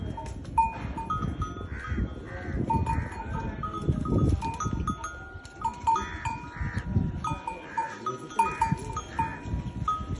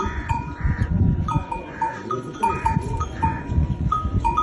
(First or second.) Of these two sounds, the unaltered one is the first